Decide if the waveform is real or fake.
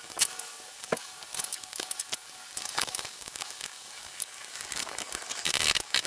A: fake